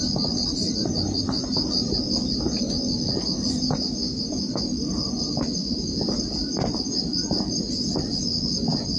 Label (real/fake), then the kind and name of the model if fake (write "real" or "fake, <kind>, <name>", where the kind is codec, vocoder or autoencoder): real